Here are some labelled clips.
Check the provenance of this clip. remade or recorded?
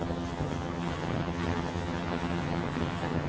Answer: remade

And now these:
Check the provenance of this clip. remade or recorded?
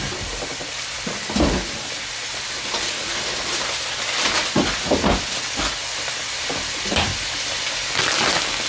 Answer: recorded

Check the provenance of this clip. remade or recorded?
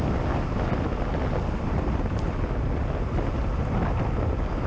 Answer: recorded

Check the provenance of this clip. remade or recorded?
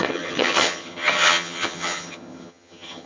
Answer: remade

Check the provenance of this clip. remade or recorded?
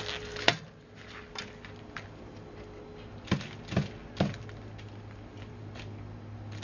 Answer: recorded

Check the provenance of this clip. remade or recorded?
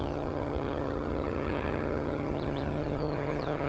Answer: remade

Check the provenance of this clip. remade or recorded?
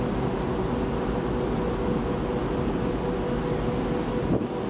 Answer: recorded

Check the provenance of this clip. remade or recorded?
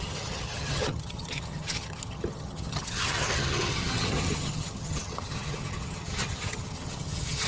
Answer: remade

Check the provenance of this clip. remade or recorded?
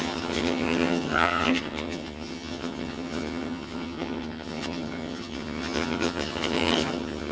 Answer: remade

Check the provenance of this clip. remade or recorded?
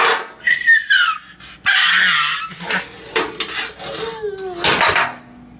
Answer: recorded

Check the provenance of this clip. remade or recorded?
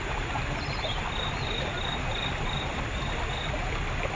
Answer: recorded